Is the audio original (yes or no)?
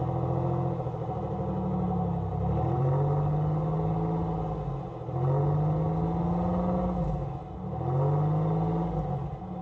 yes